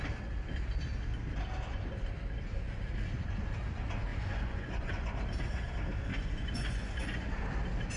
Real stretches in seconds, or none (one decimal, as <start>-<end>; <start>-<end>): 0.0-4.1; 5.1-6.1; 7.3-8.0